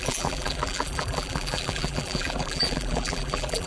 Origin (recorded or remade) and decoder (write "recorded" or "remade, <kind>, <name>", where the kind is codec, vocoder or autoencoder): remade, vocoder, BigVGAN v2